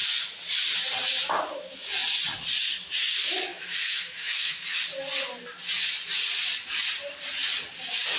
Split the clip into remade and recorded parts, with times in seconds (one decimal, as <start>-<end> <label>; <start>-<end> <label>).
0.0-3.5 recorded; 3.5-4.8 remade; 4.8-8.2 recorded